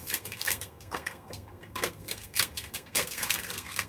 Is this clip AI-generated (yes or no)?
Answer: yes